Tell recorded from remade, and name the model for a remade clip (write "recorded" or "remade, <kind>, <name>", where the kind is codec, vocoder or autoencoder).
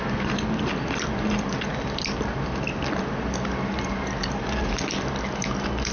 recorded